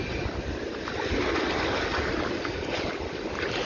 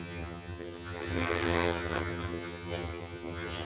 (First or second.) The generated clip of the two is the second